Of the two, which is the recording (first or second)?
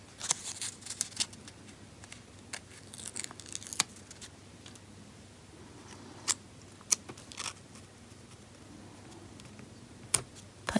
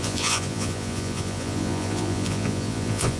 first